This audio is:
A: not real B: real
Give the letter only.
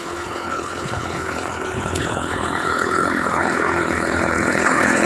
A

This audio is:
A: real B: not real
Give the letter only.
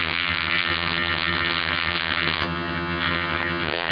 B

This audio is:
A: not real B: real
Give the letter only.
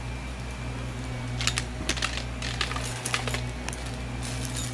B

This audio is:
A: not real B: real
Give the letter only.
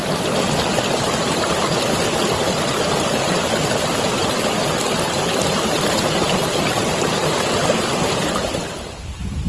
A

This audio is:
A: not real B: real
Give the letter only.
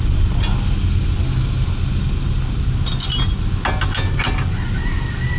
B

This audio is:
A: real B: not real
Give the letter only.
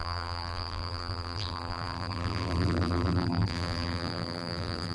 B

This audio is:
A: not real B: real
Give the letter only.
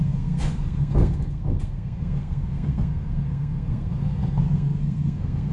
A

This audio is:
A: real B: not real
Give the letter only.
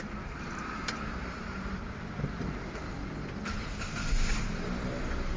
B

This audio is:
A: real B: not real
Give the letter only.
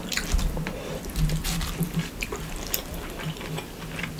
B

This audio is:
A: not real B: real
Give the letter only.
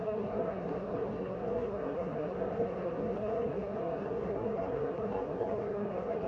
A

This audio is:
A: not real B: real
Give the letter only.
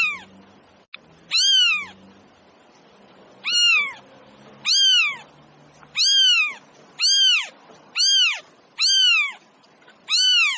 B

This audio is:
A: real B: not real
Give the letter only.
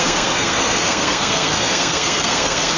B